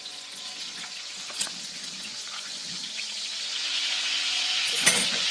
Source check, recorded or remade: remade